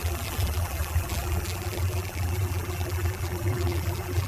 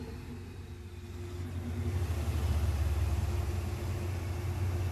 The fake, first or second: first